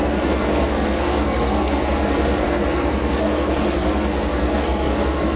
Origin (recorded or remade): remade